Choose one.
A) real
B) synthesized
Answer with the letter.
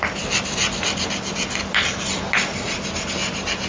A